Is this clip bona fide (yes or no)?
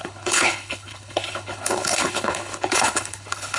no